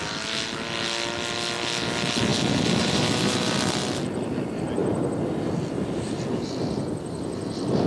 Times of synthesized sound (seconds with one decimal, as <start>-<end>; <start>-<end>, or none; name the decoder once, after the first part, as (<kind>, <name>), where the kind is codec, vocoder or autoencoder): none